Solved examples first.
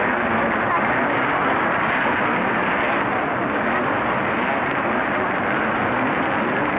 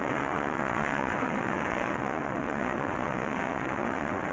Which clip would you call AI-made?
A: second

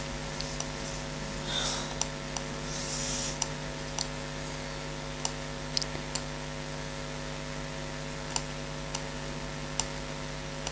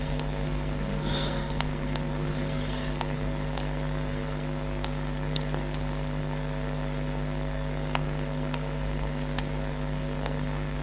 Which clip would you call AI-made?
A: second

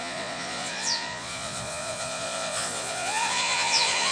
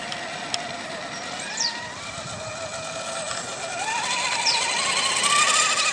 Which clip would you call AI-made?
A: first